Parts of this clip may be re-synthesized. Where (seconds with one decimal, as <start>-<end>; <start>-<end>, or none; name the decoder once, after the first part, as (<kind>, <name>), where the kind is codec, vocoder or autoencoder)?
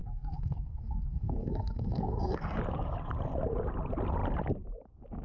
0.0-2.6 (codec, SNAC)